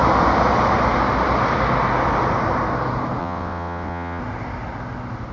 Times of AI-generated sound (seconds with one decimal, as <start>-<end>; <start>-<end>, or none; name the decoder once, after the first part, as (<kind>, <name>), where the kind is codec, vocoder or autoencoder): 3.2-4.2 (vocoder, WaveNeXt)